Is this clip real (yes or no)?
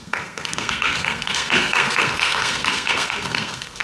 no